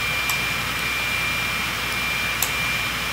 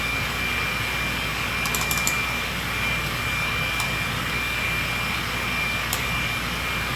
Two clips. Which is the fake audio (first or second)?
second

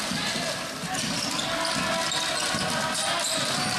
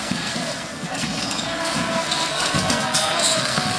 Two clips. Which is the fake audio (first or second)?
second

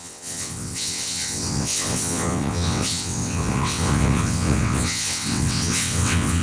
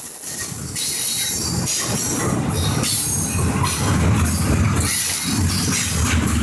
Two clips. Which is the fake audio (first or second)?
first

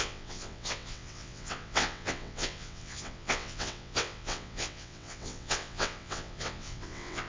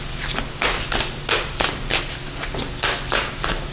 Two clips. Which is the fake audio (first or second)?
first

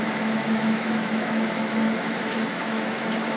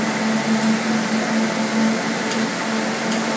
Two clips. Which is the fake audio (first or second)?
first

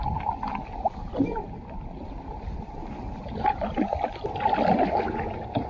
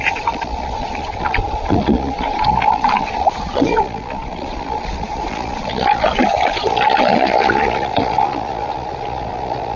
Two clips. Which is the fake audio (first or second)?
second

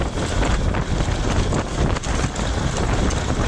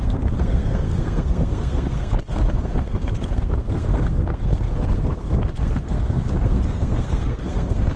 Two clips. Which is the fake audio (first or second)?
second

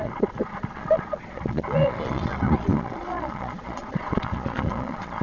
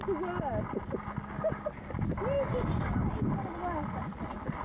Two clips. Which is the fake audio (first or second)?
first